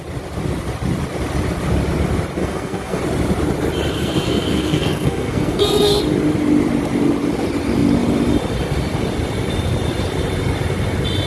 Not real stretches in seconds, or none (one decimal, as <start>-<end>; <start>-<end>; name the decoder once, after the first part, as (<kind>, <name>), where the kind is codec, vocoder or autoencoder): 2.4-3.0 (codec, SNAC); 3.9-6.0